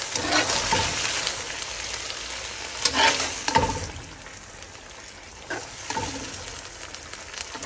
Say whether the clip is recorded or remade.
recorded